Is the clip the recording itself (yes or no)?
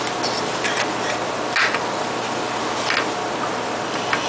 yes